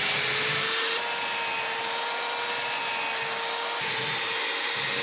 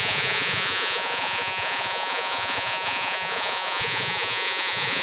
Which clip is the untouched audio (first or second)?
first